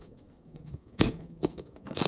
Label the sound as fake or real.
fake